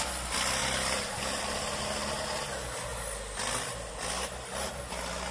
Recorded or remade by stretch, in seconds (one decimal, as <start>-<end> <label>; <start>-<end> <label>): 0.0-5.3 recorded